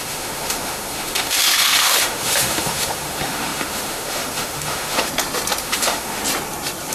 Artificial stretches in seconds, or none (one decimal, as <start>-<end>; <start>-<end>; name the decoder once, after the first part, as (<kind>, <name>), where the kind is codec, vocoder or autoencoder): 0.0-5.1 (autoencoder, DAC-VAE); 5.6-6.2

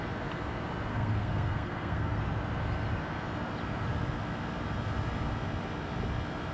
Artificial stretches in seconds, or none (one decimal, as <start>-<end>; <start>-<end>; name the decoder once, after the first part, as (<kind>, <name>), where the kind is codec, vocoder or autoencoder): 0.9-2.2 (codec, SNAC)

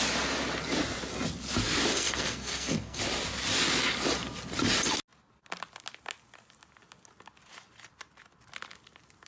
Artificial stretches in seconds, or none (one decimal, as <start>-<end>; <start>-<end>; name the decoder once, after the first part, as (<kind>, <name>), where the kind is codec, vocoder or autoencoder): 1.9-3.0 (codec, SNAC)

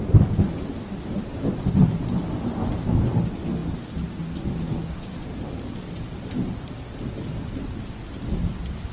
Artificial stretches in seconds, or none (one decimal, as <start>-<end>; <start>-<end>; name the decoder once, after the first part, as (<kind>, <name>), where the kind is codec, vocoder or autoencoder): none

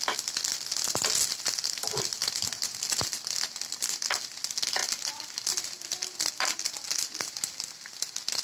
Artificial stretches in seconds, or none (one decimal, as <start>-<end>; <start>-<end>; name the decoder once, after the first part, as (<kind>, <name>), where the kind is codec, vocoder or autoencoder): none

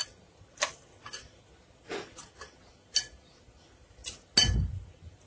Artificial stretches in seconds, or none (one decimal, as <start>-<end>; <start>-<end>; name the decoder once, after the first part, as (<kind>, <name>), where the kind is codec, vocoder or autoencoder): none

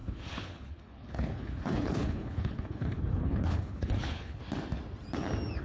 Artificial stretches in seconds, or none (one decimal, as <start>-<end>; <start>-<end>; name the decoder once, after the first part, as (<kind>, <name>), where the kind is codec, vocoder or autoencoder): 0.0-4.4 (codec, HILCodec)

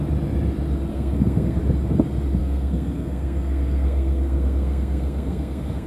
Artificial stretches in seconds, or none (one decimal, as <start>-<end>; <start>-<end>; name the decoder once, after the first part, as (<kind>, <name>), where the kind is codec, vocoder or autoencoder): 0.9-1.6 (codec, SNAC); 2.4-5.9